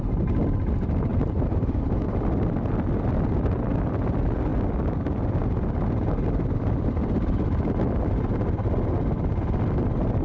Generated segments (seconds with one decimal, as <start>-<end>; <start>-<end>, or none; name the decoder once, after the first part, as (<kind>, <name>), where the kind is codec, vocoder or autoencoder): 1.1-2.2 (vocoder, BigVGAN v2)